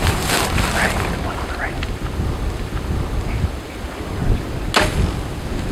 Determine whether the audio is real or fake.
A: real